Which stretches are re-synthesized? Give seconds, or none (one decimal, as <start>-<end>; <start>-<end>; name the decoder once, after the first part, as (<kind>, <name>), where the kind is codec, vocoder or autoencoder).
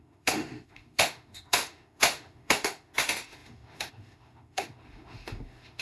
0.0-5.8 (autoencoder, DAC-VAE)